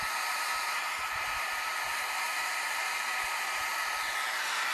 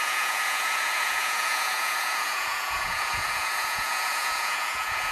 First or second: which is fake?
second